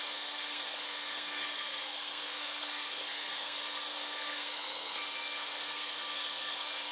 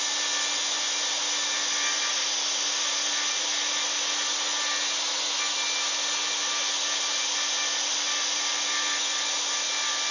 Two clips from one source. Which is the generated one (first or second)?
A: first